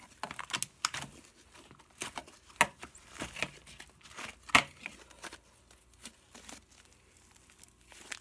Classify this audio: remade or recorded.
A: recorded